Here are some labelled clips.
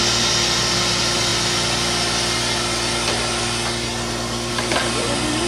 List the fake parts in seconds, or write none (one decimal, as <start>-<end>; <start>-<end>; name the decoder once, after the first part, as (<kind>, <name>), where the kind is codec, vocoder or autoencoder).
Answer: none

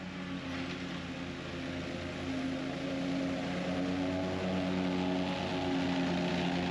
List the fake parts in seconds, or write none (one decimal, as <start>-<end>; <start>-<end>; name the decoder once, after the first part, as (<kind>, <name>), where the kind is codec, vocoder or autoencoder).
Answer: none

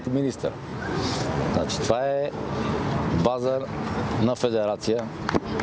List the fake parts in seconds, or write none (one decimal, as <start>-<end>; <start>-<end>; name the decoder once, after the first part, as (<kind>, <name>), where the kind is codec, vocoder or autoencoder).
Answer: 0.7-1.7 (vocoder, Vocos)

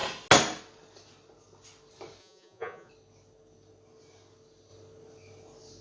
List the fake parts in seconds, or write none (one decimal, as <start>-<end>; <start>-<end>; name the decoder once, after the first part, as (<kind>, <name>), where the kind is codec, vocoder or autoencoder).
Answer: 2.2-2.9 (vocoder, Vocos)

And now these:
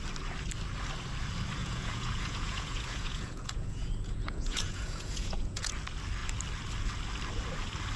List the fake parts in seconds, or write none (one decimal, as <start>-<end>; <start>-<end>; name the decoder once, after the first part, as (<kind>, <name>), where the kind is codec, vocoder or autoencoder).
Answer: 1.6-5.7 (vocoder, Vocos)

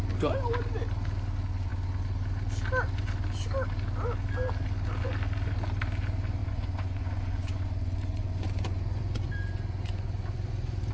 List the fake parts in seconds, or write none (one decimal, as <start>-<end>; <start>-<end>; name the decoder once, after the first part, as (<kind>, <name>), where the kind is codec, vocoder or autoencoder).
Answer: 6.4-10.9 (vocoder, Vocos)

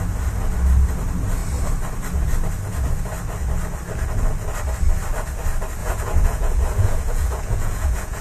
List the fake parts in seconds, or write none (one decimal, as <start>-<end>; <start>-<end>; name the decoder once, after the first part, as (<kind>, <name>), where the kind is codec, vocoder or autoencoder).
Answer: 5.8-8.2 (vocoder, Vocos)